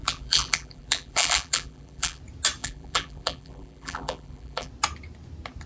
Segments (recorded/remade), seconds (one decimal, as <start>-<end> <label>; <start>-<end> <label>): 0.0-2.2 remade; 2.2-2.6 recorded; 2.6-4.7 remade; 4.7-5.7 recorded